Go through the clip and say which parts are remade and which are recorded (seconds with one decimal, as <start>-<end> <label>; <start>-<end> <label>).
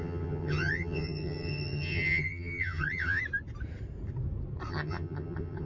0.0-3.2 remade; 3.2-4.7 recorded; 4.7-5.7 remade